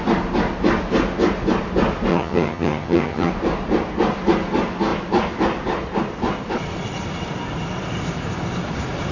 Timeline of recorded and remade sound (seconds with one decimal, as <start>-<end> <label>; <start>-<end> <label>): 0.0-2.1 recorded; 2.1-3.3 remade; 3.3-9.1 recorded